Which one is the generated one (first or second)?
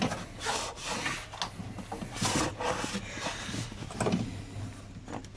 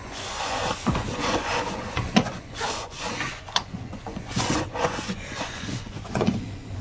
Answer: second